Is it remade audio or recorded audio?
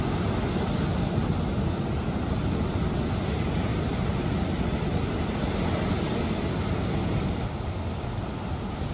recorded